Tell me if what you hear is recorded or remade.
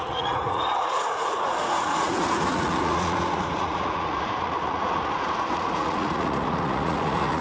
remade